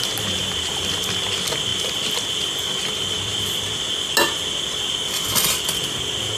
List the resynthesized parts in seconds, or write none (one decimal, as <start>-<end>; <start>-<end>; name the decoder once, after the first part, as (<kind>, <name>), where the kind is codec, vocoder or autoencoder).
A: 0.0-0.7 (vocoder, BigVGAN v2)